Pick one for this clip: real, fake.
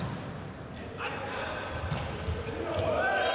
real